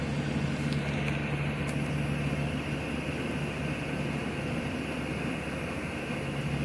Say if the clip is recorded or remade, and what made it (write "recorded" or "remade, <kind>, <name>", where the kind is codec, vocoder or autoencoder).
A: recorded